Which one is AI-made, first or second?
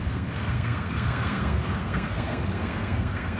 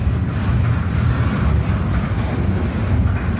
first